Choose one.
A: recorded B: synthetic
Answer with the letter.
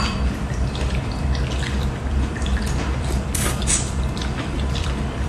B